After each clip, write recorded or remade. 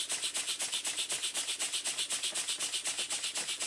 recorded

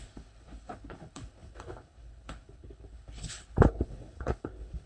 remade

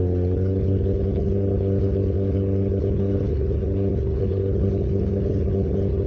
remade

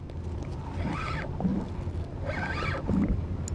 recorded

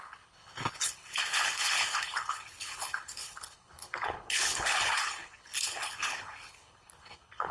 remade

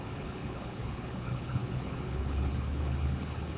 remade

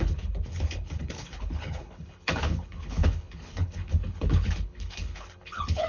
remade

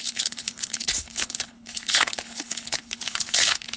remade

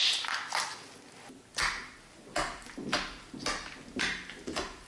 recorded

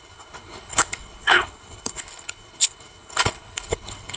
remade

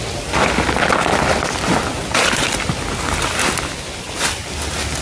recorded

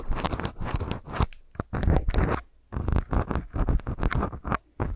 recorded